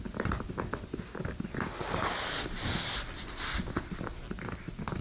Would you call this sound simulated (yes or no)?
no